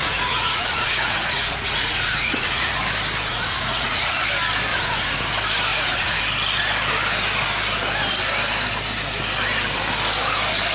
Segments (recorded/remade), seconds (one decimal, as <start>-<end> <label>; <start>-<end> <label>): 0.0-2.8 remade; 2.8-3.3 recorded; 3.3-4.2 remade; 4.2-4.7 recorded; 4.7-5.2 remade; 5.2-5.7 recorded; 5.7-6.2 remade; 6.2-10.7 recorded